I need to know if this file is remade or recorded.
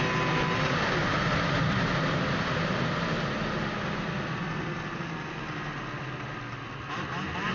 recorded